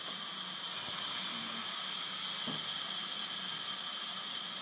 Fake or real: real